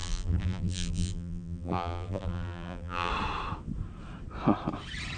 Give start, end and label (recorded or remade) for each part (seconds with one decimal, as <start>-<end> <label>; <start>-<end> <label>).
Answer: 0.0-3.1 remade; 3.1-5.2 recorded